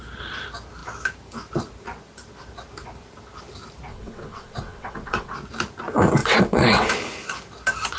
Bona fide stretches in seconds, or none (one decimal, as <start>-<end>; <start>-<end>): 0.0-3.9; 5.3-6.2; 6.9-8.0